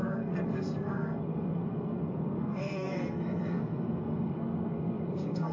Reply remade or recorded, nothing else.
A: remade